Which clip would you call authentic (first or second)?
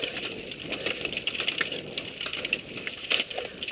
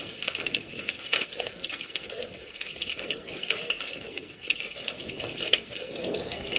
first